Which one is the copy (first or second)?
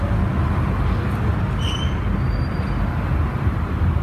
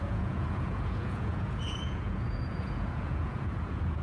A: second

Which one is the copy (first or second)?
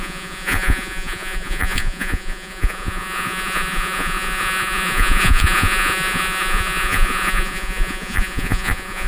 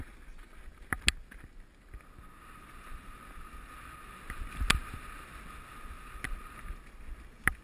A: first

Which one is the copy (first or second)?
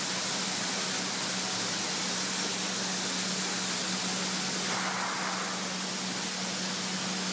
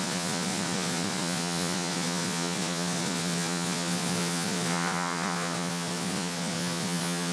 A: second